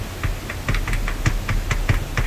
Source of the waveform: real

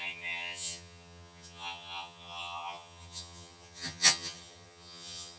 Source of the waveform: fake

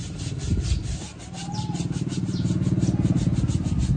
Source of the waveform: real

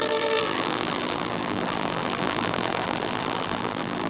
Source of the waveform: fake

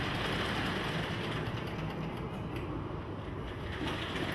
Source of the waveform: real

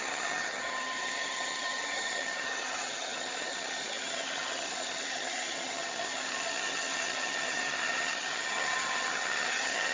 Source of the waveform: fake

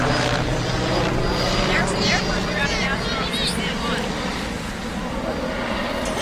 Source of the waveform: real